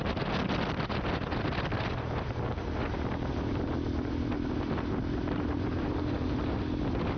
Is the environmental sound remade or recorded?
recorded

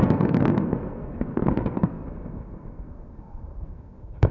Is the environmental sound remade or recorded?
remade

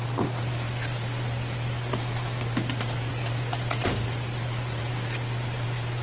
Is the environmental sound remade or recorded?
recorded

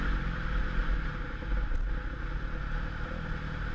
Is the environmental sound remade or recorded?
recorded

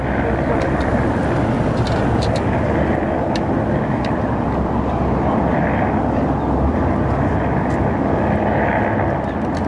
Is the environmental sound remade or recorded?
recorded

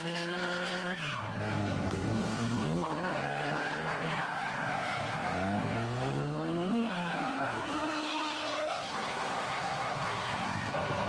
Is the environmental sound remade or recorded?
remade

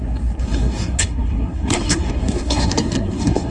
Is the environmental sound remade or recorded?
remade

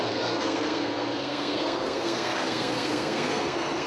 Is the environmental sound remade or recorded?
remade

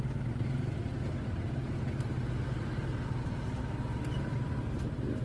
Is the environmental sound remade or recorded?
recorded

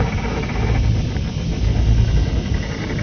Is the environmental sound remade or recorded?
recorded